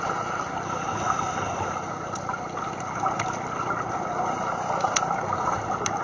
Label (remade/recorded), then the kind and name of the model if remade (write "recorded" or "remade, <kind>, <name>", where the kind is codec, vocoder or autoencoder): recorded